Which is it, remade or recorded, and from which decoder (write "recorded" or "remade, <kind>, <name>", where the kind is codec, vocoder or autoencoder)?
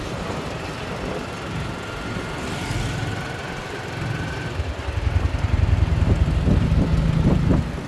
recorded